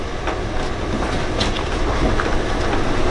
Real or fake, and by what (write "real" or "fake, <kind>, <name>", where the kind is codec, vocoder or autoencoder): real